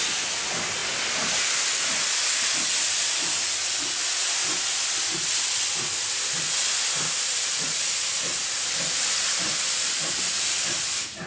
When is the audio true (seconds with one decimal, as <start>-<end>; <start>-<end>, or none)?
0.0-11.3